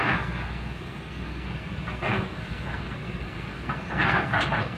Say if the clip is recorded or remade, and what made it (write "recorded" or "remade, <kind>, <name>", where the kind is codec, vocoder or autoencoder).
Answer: remade, codec, SNAC